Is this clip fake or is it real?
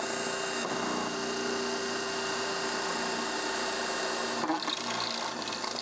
real